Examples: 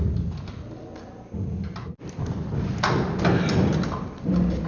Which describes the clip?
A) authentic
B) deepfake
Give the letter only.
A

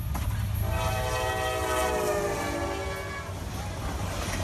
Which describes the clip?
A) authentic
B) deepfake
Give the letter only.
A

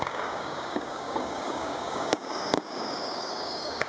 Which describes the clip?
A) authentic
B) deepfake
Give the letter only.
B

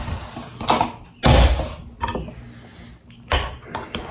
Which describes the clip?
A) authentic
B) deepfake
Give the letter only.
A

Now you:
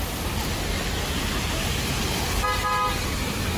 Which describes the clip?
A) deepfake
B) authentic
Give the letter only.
B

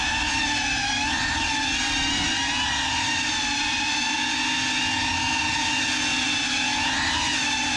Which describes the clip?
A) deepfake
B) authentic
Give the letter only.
B